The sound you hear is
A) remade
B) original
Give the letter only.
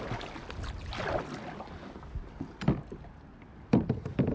B